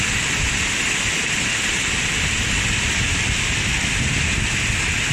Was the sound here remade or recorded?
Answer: recorded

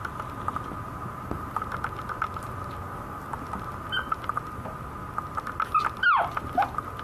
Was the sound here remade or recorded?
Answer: recorded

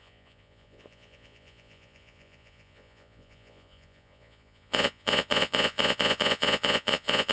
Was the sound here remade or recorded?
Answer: remade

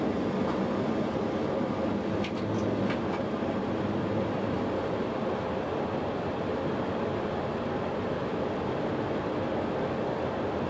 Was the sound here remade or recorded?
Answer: recorded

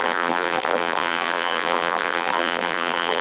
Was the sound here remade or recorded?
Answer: remade